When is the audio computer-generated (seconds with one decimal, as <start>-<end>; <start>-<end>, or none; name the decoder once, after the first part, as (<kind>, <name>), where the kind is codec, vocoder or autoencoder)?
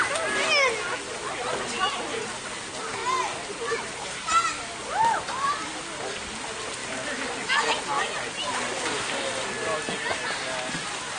none